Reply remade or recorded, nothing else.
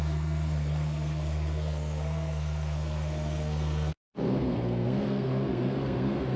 remade